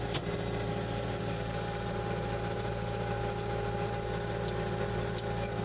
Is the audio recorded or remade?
recorded